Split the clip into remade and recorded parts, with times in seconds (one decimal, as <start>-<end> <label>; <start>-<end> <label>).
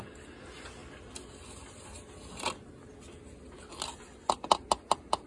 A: 0.0-5.3 recorded